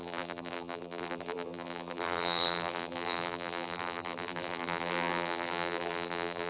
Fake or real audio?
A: fake